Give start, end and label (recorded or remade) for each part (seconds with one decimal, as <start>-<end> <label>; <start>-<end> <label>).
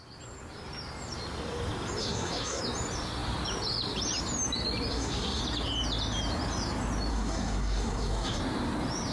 0.0-2.0 recorded; 2.0-2.6 remade; 2.6-4.9 recorded; 4.9-5.4 remade; 5.4-7.1 recorded; 7.1-8.4 remade; 8.4-9.1 recorded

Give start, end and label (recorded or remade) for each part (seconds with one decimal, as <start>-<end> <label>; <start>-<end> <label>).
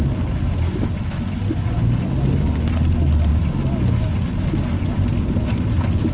0.0-6.1 recorded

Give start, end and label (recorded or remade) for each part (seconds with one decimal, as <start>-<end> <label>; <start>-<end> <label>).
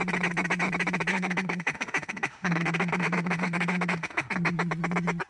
0.0-1.1 recorded; 1.1-4.3 remade; 4.3-5.3 recorded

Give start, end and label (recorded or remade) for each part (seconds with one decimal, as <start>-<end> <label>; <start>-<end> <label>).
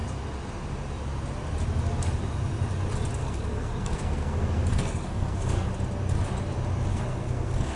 0.0-3.2 recorded; 3.2-5.7 remade; 5.7-6.9 recorded; 6.9-7.8 remade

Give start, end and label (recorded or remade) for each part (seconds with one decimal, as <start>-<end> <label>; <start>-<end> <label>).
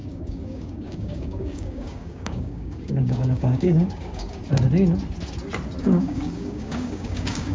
0.0-4.4 remade; 4.4-5.8 recorded; 5.8-7.5 remade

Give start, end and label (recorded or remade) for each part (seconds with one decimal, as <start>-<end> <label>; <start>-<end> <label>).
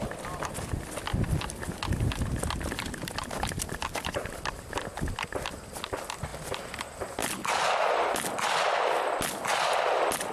0.0-10.3 recorded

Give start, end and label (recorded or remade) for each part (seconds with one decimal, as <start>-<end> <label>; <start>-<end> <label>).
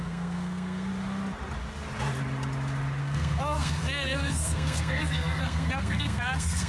0.0-0.9 remade; 0.9-3.0 recorded; 3.0-6.7 remade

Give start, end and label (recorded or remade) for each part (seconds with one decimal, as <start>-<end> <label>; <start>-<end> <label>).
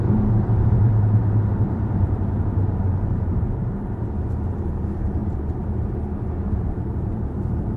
0.0-7.8 remade